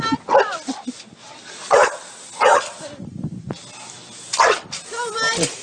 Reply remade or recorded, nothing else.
recorded